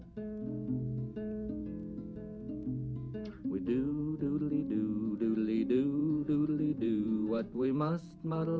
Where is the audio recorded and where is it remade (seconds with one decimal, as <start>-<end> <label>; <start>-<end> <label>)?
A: 0.0-6.0 recorded; 6.0-8.6 remade